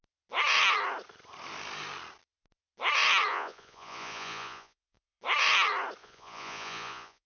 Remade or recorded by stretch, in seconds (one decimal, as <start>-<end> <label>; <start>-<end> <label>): 0.0-3.3 recorded; 3.3-5.2 remade; 5.2-6.0 recorded; 6.0-7.3 remade